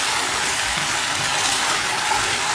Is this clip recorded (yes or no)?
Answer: no